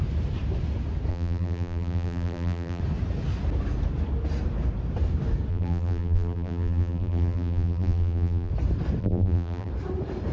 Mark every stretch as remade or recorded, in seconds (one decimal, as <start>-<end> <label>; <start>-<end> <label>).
0.0-1.1 recorded; 1.1-2.8 remade; 2.8-5.5 recorded; 5.5-8.5 remade; 8.5-9.0 recorded; 9.0-9.7 remade; 9.7-10.3 recorded